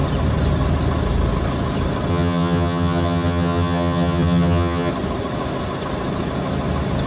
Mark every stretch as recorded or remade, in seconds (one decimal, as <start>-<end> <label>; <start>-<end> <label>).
0.0-2.1 recorded; 2.1-4.9 remade; 4.9-7.1 recorded